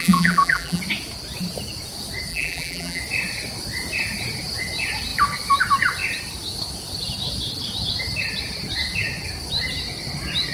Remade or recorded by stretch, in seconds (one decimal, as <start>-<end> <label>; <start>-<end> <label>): 0.0-0.8 remade; 0.8-2.3 recorded; 2.3-3.0 remade; 3.0-10.5 recorded